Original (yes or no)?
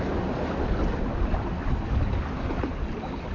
yes